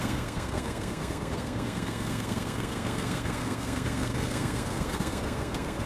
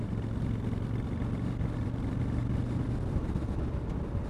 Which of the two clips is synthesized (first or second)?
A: first